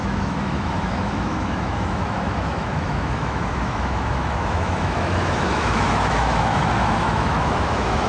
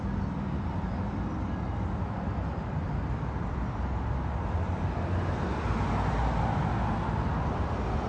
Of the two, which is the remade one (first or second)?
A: first